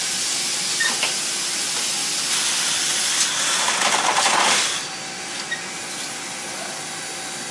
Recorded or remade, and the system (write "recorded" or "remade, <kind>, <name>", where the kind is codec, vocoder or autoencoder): recorded